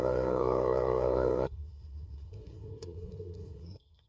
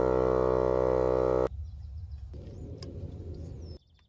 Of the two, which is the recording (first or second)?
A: second